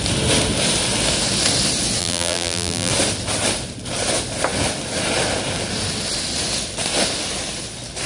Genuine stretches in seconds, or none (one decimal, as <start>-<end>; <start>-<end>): 0.0-2.0; 2.9-8.1